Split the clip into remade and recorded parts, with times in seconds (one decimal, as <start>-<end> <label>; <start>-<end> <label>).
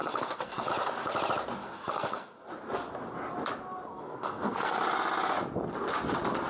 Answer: 0.0-0.7 remade; 0.7-1.6 recorded; 1.6-2.4 remade; 2.4-3.9 recorded; 3.9-4.8 remade; 4.8-6.5 recorded